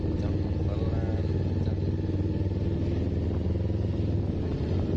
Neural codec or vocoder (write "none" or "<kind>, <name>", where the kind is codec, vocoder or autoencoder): none